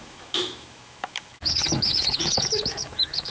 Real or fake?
fake